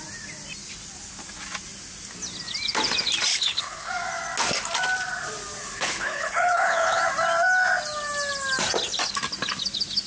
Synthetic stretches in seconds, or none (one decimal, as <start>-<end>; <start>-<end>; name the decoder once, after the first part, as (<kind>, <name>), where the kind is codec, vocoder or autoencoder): 3.3-3.9 (codec, HILCodec); 5.6-7.0

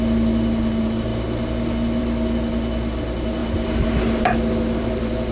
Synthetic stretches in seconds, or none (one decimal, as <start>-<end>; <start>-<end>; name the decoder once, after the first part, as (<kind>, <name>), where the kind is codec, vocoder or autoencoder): none

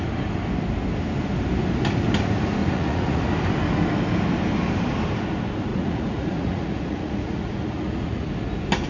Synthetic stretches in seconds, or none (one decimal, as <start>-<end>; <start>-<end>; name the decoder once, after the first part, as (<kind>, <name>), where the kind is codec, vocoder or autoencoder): 2.6-3.2 (vocoder, Vocos); 5.7-8.3

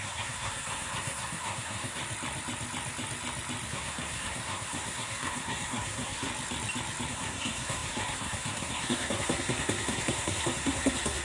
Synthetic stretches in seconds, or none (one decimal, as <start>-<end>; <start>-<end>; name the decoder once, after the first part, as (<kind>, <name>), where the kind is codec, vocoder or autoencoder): 0.0-2.0 (codec, SNAC); 3.7-6.3; 7.1-11.2

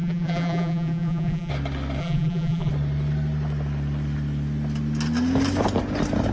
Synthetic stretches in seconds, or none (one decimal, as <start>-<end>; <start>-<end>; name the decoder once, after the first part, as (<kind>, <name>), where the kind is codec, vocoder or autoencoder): 0.0-1.5 (vocoder, BigVGAN v2); 2.0-2.7